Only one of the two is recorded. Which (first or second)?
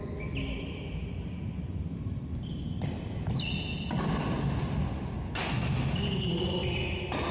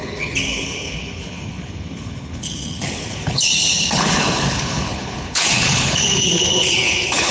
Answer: first